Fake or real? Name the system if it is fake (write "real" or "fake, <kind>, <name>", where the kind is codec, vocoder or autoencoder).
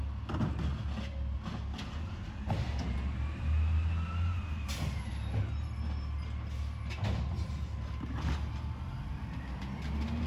real